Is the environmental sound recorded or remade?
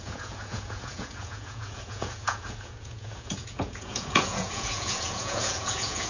remade